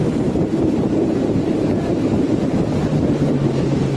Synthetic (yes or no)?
yes